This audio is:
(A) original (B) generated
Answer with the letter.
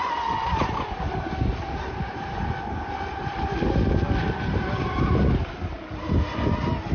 A